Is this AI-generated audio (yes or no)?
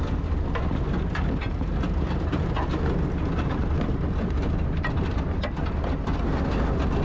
no